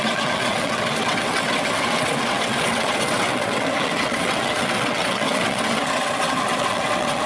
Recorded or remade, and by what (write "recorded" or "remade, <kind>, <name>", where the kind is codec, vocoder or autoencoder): remade, vocoder, WaveNeXt